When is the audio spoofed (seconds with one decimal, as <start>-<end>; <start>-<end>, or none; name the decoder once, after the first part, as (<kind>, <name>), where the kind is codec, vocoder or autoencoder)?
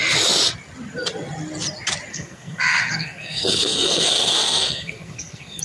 2.1-5.6 (codec, SNAC)